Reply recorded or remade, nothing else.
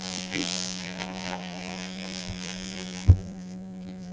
remade